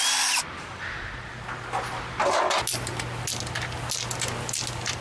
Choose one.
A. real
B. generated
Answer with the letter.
A